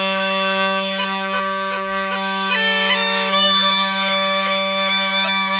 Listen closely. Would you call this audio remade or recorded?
remade